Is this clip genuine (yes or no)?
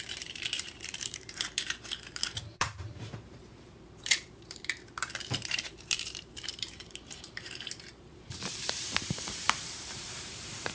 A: no